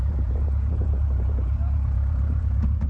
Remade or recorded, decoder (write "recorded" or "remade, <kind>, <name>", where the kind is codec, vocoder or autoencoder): remade, vocoder, Vocos